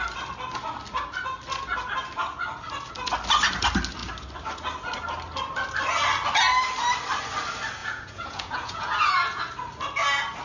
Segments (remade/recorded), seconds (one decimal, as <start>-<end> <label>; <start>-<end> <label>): 0.0-7.8 recorded; 7.8-9.4 remade; 9.4-10.4 recorded